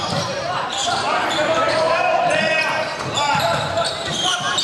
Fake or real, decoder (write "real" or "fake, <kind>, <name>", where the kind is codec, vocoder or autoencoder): fake, vocoder, BigVGAN v2